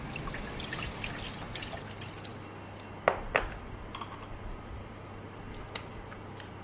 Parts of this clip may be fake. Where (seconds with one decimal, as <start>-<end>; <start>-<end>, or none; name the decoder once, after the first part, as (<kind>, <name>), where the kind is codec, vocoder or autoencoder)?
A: none